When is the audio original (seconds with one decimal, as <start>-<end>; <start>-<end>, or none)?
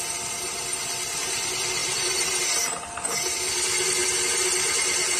0.0-1.8; 2.5-5.2